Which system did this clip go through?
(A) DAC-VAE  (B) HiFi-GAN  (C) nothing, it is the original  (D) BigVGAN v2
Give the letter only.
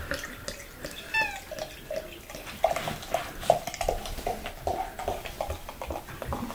C